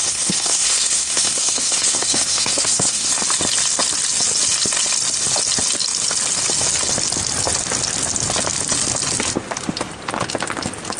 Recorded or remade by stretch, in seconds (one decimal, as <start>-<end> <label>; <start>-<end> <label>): 0.0-3.1 remade; 3.1-11.0 recorded